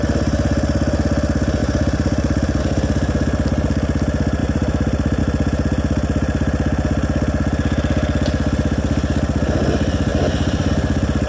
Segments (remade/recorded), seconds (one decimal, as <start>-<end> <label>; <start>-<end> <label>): 0.0-1.6 recorded; 1.6-2.6 remade; 2.6-4.4 recorded; 4.4-5.2 remade; 5.2-10.1 recorded; 10.1-10.7 remade; 10.7-11.3 recorded

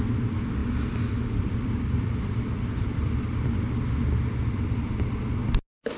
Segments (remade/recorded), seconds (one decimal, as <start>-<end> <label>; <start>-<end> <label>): 0.0-0.6 recorded; 0.6-3.5 remade; 3.5-6.0 recorded

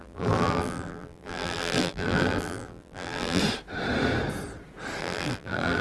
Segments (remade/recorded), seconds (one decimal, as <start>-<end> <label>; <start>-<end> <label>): 0.0-3.4 remade; 3.4-5.0 recorded; 5.0-5.8 remade

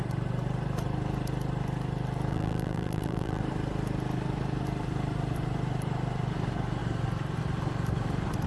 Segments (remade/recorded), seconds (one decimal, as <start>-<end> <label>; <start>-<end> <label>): 0.0-2.3 recorded; 2.3-3.4 remade; 3.4-8.5 recorded

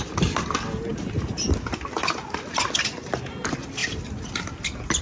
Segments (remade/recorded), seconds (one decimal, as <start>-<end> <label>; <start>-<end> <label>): 0.0-5.0 recorded

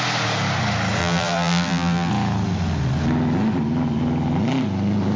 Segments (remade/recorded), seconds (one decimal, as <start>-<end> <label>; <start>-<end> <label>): 0.0-1.0 recorded; 1.0-2.1 remade; 2.1-5.2 recorded